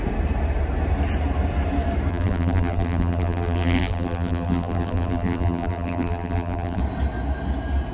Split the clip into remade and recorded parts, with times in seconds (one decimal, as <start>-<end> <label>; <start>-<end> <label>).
0.0-2.1 recorded; 2.1-6.8 remade; 6.8-7.9 recorded